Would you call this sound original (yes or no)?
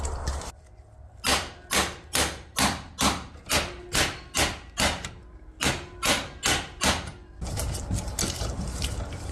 yes